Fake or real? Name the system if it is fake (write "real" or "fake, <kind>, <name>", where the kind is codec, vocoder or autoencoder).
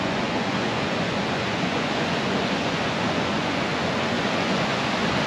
fake, vocoder, Vocos